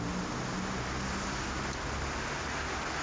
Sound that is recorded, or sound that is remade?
recorded